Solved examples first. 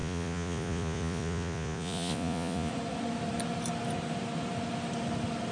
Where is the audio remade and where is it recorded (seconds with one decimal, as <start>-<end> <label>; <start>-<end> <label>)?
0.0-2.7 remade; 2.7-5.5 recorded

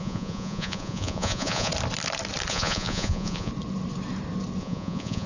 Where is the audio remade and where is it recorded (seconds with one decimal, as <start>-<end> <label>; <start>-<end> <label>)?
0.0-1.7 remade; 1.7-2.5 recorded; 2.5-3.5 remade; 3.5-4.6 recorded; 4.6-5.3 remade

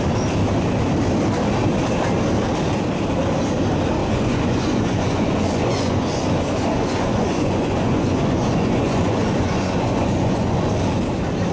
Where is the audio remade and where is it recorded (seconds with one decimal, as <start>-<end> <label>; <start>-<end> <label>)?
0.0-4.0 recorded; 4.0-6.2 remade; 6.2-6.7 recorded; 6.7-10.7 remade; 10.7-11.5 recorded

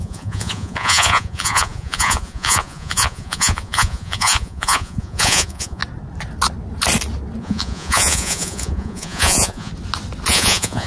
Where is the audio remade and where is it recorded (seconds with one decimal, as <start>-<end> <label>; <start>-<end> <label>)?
0.0-5.8 remade; 5.8-7.4 recorded; 7.4-9.7 remade; 9.7-10.3 recorded; 10.3-10.9 remade

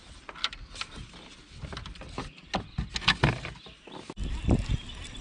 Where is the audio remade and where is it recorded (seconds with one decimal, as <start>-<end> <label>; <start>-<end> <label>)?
0.0-5.2 recorded